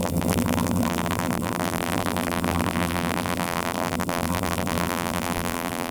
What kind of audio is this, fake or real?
fake